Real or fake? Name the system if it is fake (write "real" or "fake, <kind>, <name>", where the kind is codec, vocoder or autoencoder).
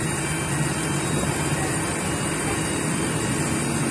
real